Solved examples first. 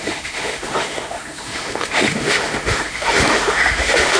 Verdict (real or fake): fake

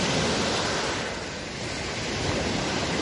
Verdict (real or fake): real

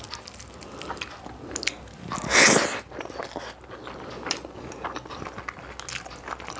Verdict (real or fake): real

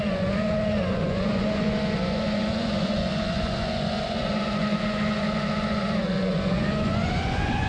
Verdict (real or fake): fake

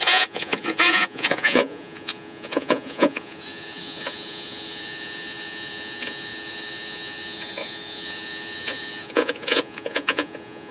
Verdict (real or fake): fake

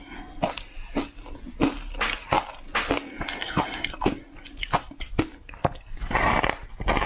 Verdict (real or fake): real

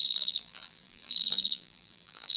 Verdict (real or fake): fake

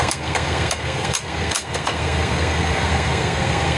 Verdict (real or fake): fake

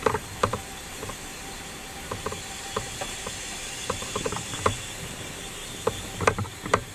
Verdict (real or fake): fake